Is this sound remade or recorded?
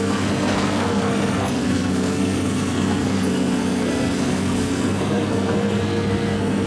remade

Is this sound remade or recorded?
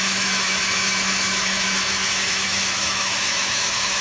remade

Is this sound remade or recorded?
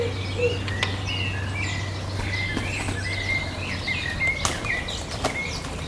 recorded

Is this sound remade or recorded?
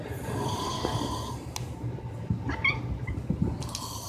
recorded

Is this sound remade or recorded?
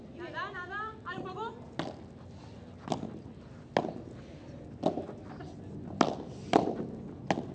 recorded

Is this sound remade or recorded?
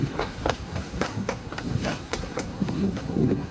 remade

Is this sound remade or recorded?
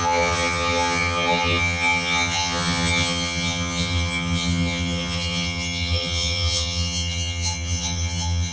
remade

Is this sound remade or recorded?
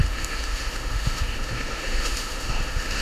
remade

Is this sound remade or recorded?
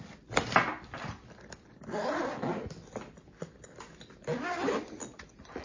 recorded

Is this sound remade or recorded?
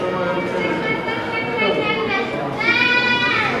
recorded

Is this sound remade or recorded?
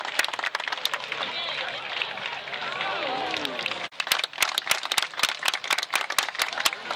recorded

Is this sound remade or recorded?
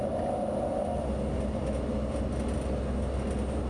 recorded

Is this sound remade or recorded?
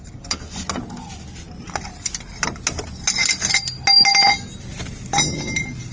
recorded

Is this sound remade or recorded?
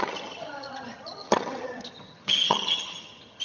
remade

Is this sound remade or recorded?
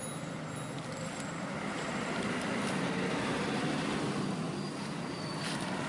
recorded